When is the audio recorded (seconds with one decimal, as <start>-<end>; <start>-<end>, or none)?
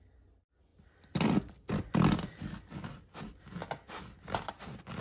0.0-5.0